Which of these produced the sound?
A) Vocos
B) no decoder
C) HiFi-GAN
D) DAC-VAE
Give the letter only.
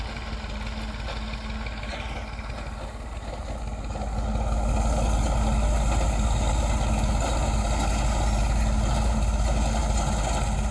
B